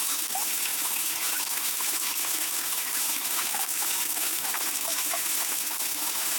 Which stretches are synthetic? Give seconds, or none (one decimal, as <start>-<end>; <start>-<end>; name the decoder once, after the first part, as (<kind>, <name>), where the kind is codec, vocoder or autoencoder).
0.0-6.4 (autoencoder, DAC-VAE)